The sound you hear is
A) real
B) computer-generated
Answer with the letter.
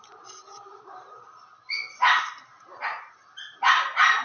A